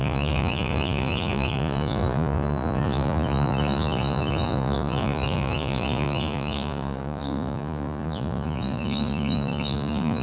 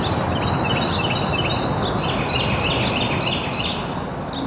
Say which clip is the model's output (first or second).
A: first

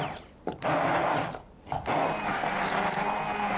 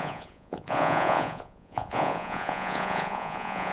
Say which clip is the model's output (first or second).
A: second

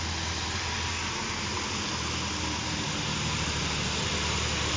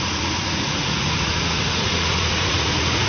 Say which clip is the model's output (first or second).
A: second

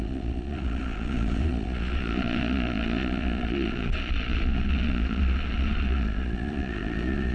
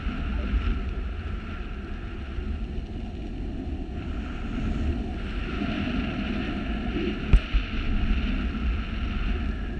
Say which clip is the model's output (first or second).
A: first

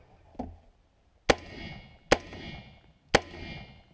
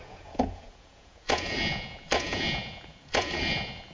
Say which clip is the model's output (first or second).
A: second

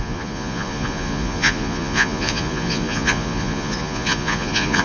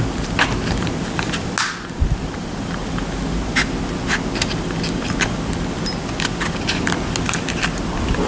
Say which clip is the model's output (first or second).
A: first